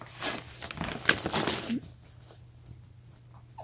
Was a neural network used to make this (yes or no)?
no